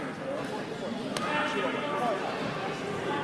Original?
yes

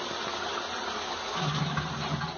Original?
yes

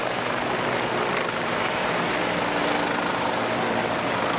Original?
yes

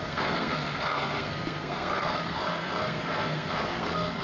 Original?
no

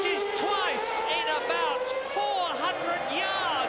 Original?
yes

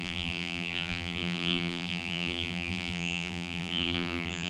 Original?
no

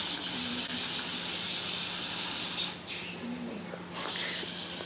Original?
yes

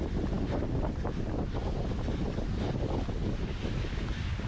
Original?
yes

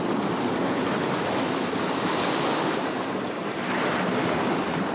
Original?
yes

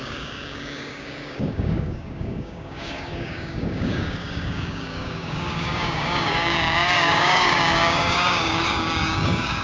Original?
no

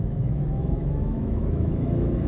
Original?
no